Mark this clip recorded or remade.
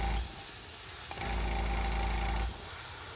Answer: recorded